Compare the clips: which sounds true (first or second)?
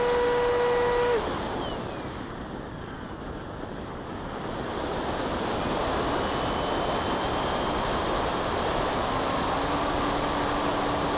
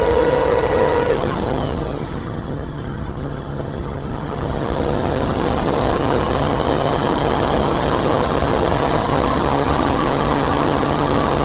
first